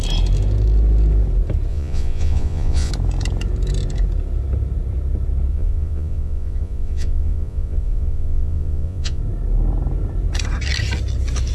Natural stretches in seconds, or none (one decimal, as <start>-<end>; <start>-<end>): 0.0-1.7; 2.9-5.5; 9.2-11.5